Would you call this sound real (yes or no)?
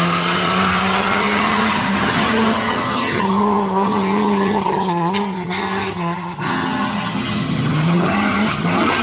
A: no